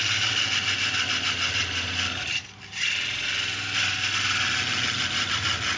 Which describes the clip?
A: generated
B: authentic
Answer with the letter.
B